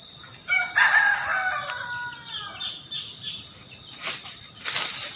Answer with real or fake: real